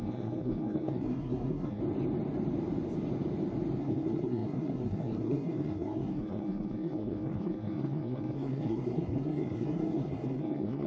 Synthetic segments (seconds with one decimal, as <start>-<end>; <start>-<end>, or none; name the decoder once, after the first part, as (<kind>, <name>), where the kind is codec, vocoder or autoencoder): 0.0-1.8 (codec, SNAC); 3.8-10.9